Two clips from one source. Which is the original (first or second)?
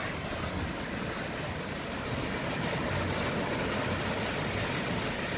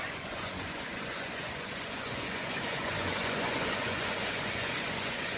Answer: first